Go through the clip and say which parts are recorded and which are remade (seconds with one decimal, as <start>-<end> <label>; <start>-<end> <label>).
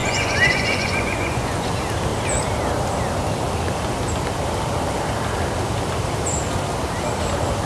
0.0-1.7 remade; 1.7-7.7 recorded